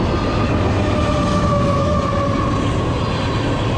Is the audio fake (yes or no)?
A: no